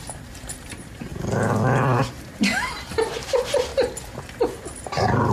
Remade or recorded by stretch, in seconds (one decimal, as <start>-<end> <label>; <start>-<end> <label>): 0.0-1.1 remade; 1.1-2.0 recorded; 2.0-3.7 remade; 3.7-5.3 recorded